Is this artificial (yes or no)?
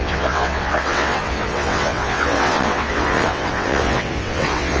yes